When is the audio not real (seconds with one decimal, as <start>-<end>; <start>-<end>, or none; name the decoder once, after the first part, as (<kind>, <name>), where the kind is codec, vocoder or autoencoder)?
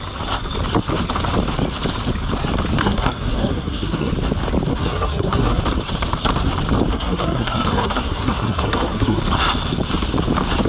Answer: 2.8-4.1 (codec, SNAC); 4.7-5.6; 6.9-9.2